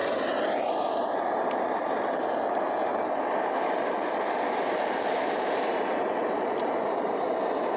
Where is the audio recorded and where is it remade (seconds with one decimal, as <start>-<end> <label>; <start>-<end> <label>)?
0.0-7.8 recorded